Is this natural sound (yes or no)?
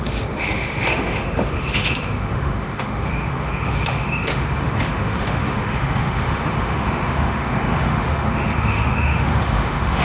no